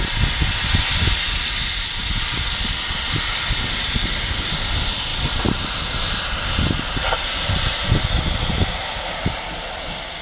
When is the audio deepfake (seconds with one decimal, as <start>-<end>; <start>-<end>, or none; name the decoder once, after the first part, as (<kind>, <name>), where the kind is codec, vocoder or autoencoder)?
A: none

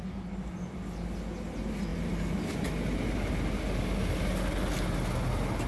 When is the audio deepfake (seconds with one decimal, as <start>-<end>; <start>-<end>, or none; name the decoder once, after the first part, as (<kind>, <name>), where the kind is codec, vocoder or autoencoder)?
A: none

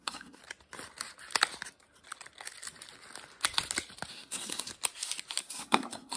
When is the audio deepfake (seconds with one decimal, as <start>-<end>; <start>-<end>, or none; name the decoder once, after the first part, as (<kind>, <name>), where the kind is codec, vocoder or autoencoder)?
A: 0.0-0.4 (codec, SNAC); 4.1-4.7; 5.4-6.2

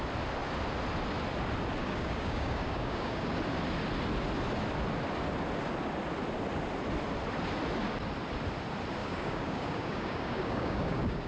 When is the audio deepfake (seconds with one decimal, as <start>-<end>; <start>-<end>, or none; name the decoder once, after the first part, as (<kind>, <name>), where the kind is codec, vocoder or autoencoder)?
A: 1.8-3.3 (codec, DAC); 9.0-11.3

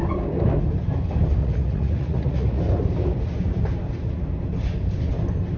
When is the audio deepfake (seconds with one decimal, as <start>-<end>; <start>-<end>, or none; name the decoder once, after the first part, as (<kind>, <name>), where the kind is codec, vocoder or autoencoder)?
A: 1.4-2.6 (vocoder, Vocos)

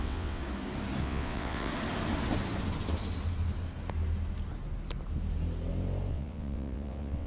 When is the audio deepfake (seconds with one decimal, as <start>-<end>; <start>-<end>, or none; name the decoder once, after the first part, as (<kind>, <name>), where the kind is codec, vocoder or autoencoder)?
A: 0.0-0.4 (vocoder, WaveNeXt); 1.0-1.7; 6.1-7.3